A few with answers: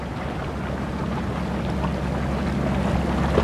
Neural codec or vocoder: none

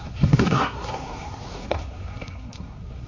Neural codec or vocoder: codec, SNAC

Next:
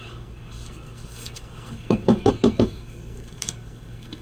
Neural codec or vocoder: codec, SNAC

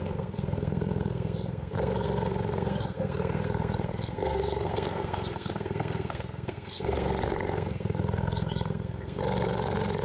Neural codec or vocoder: codec, SNAC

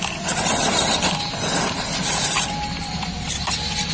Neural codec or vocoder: none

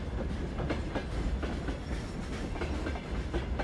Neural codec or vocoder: none